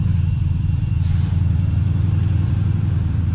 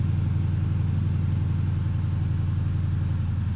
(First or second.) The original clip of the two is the second